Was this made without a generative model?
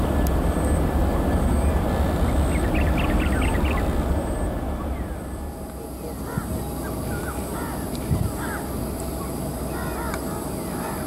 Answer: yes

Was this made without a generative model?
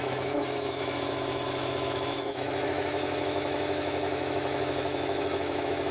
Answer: no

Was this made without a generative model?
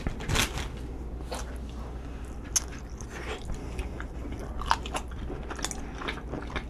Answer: yes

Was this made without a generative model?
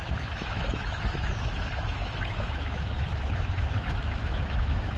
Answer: no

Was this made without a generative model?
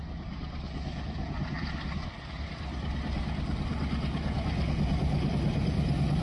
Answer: yes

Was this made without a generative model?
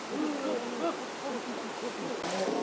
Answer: yes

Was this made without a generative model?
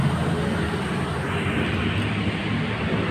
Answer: yes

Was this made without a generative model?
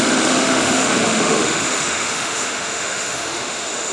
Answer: no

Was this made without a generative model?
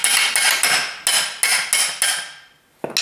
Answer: yes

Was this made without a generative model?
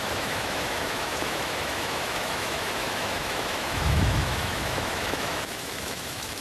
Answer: no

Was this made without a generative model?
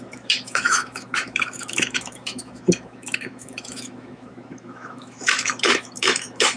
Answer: no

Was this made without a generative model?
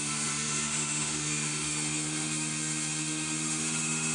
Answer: no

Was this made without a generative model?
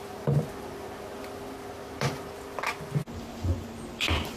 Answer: yes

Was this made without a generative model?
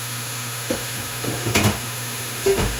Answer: no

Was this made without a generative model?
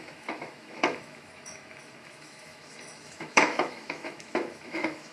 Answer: no